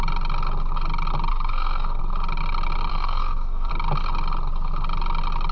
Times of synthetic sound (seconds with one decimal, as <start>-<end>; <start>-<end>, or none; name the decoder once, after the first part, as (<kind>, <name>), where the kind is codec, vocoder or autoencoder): 1.3-2.0 (codec, SNAC); 2.9-3.7